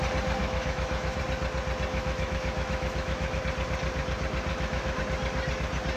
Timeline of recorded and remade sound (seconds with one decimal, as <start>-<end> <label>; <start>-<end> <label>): 0.0-0.4 recorded; 0.4-1.2 remade; 1.2-1.9 recorded; 1.9-3.4 remade; 3.4-4.5 recorded; 4.5-5.0 remade; 5.0-6.0 recorded